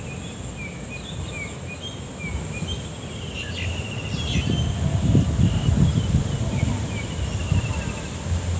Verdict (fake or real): real